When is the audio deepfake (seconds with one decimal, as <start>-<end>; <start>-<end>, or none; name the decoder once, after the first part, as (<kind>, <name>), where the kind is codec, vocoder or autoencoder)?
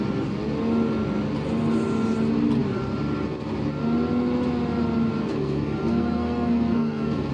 5.3-7.3 (codec, SNAC)